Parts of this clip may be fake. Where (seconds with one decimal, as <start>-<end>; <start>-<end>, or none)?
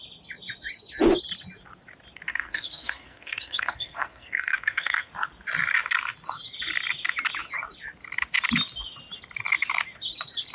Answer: 2.3-5.1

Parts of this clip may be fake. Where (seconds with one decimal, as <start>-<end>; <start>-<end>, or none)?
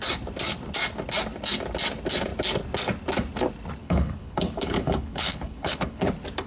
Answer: 3.8-6.1